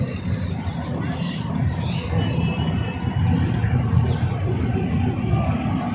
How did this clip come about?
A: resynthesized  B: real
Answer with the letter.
A